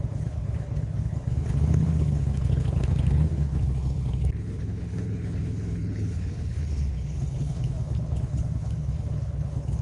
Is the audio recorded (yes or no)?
no